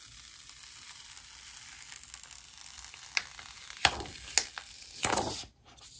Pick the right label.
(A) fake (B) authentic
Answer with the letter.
B